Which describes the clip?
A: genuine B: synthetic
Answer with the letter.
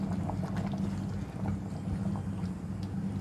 A